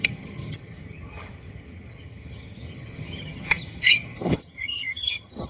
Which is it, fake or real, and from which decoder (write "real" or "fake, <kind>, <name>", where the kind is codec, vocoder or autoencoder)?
fake, vocoder, HiFi-GAN